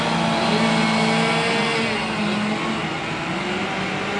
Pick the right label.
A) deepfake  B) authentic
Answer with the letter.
B